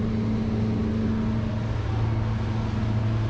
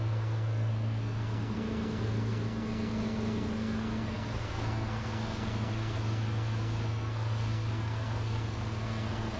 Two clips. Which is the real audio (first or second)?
first